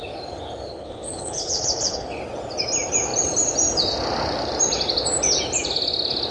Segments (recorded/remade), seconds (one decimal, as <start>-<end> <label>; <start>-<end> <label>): 0.0-0.7 recorded; 0.7-2.2 remade; 2.2-6.3 recorded